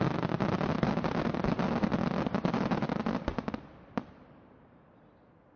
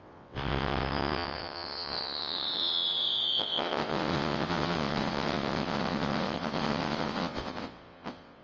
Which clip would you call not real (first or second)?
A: second